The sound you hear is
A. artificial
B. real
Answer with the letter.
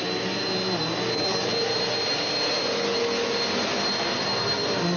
B